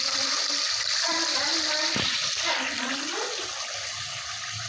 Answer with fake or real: fake